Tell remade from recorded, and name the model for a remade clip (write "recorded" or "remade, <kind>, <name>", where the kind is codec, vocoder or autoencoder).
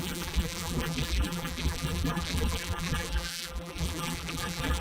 remade, vocoder, BigVGAN v2